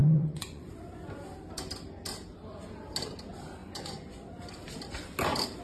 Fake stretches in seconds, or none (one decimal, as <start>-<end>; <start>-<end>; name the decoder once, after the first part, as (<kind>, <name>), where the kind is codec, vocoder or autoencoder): 0.0-0.7 (vocoder, Vocos); 3.6-4.3